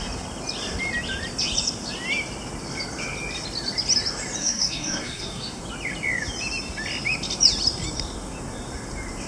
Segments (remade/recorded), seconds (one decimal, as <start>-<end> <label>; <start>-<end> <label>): 0.0-4.4 recorded; 4.4-5.6 remade; 5.6-9.3 recorded